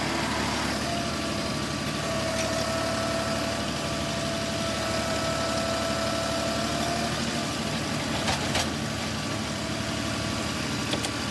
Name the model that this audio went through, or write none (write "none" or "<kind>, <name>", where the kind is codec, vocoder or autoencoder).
none